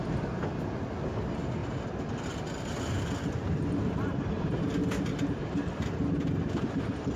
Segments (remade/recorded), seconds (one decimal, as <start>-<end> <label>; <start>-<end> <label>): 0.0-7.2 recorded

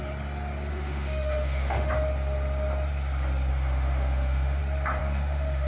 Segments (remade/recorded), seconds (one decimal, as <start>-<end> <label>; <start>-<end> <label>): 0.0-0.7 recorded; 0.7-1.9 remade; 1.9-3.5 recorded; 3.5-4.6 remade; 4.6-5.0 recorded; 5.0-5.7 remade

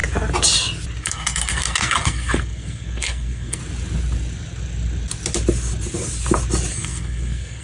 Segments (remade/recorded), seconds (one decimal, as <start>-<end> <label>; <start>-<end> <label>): 0.0-1.0 recorded; 1.0-3.6 remade; 3.6-6.7 recorded; 6.7-7.6 remade

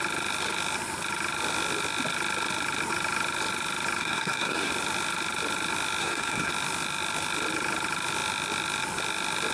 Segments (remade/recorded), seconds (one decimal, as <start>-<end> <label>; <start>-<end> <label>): 0.0-4.0 recorded; 4.0-4.7 remade; 4.7-6.0 recorded; 6.0-6.5 remade; 6.5-9.5 recorded

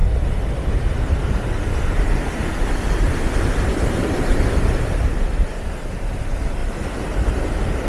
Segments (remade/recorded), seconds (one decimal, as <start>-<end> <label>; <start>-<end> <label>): 0.0-3.9 recorded; 3.9-4.3 remade; 4.3-5.5 recorded; 5.5-6.6 remade; 6.6-7.9 recorded

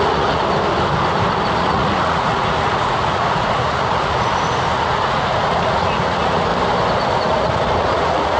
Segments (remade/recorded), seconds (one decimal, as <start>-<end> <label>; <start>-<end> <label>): 0.0-0.4 remade; 0.4-1.5 recorded; 1.5-4.3 remade; 4.3-4.8 recorded; 4.8-6.5 remade; 6.5-7.1 recorded; 7.1-8.4 remade